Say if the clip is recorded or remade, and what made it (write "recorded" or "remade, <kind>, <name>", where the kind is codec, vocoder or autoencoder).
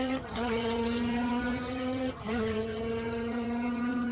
remade, vocoder, HiFi-GAN